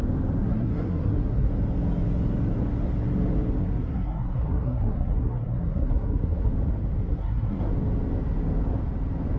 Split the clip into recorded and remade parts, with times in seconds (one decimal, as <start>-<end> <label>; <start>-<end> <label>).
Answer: 0.0-0.4 recorded; 0.4-1.5 remade; 1.5-3.6 recorded; 3.6-6.5 remade; 6.5-7.0 recorded; 7.0-7.7 remade; 7.7-9.4 recorded